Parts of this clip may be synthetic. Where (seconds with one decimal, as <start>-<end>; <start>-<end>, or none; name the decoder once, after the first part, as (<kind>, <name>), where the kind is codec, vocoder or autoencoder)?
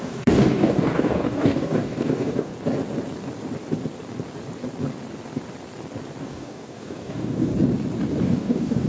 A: 0.0-2.5 (codec, DAC); 6.2-7.5; 8.2-8.9